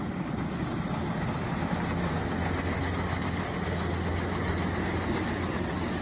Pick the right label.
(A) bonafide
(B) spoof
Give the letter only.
A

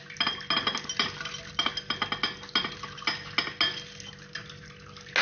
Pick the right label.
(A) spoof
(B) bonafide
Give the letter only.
B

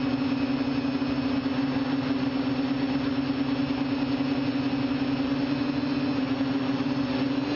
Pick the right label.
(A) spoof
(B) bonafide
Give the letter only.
B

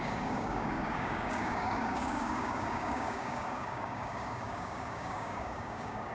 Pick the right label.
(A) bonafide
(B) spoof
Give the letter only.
B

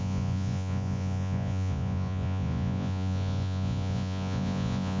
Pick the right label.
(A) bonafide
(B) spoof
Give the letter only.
B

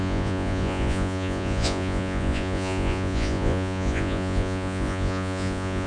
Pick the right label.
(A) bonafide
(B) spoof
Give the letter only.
B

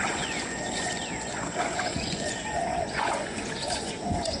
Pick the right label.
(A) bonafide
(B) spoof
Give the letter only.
B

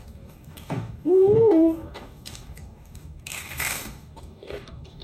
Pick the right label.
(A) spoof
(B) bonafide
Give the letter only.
A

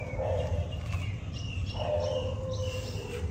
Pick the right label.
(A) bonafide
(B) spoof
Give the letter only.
A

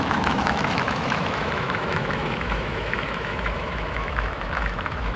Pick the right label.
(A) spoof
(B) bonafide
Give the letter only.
A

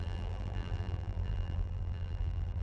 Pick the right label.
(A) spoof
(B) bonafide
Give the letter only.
A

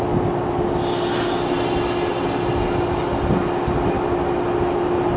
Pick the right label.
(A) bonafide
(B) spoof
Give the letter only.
A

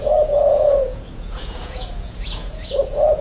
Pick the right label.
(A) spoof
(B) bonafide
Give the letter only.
A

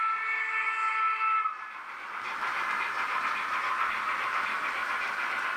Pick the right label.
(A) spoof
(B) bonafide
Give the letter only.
B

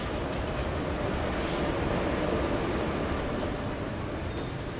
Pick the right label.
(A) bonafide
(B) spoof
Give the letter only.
A